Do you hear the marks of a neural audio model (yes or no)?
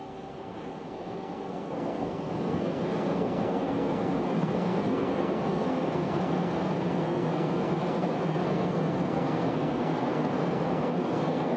yes